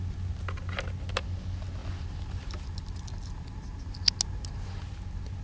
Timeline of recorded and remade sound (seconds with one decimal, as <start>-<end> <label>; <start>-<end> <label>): 0.0-5.4 recorded